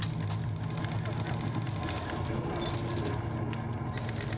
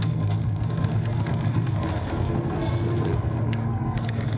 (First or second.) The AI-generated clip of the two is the second